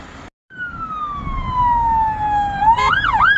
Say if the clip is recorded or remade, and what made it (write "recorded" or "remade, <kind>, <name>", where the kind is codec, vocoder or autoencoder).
recorded